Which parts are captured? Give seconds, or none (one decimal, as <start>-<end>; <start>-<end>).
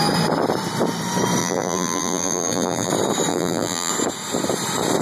0.0-1.4; 2.9-3.3; 3.9-5.0